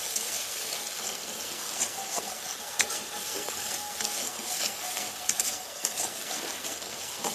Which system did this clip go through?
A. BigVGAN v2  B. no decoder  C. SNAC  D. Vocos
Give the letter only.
C